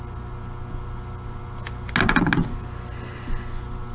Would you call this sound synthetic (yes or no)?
no